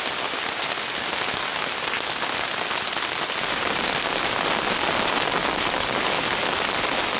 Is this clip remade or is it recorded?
recorded